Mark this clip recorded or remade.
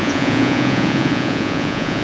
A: remade